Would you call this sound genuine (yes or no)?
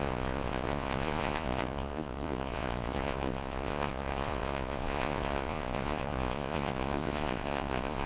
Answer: no